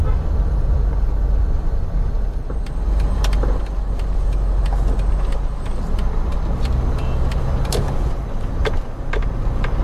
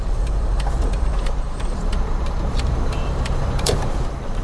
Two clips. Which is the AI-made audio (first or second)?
second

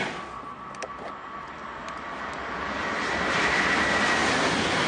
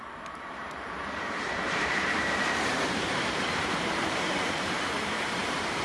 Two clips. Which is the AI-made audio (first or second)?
second